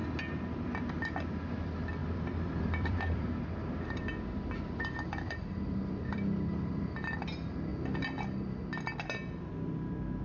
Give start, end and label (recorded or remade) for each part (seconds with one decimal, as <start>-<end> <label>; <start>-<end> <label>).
0.0-2.0 recorded; 2.0-6.8 remade; 6.8-10.2 recorded